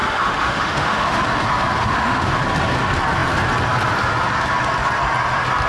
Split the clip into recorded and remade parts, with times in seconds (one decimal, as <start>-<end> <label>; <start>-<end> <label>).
0.0-1.2 remade; 1.2-1.8 recorded; 1.8-2.4 remade; 2.4-5.7 recorded